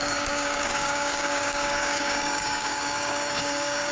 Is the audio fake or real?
fake